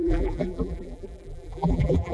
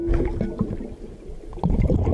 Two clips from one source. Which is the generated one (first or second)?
first